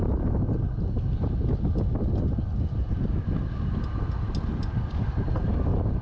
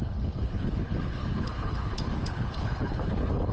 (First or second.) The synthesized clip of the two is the second